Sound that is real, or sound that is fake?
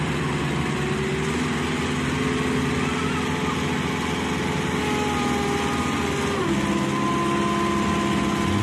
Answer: real